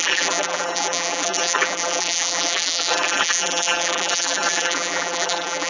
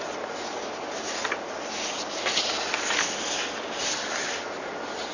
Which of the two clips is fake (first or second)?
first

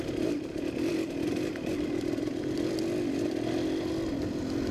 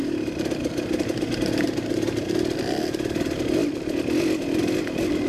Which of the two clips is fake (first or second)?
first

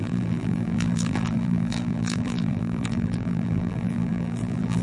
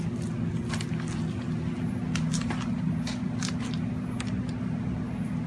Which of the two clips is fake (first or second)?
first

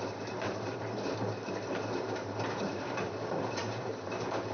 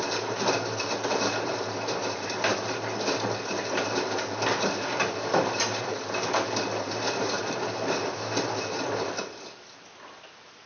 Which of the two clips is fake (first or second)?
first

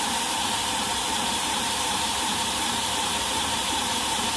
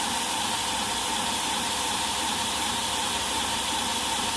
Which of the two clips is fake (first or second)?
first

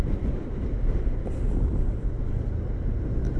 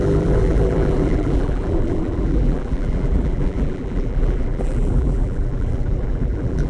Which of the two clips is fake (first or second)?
second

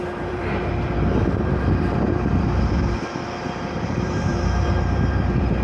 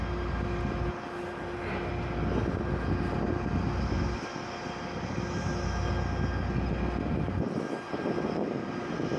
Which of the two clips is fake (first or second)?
first